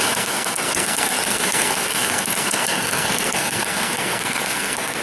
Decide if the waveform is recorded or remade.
remade